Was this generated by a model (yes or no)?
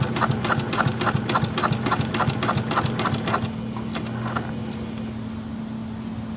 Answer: no